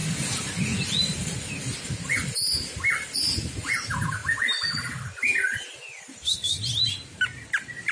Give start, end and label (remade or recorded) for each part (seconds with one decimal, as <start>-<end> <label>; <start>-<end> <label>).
0.0-7.9 recorded